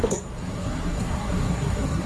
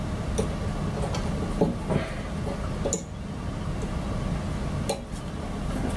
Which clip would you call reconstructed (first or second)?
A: first